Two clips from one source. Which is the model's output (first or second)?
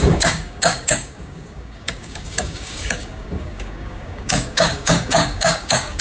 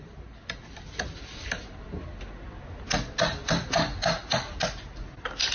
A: first